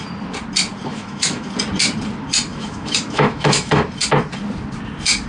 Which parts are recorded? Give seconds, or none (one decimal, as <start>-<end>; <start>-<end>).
0.0-0.9; 1.5-2.5; 3.8-5.3